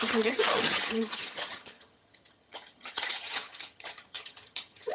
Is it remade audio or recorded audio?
remade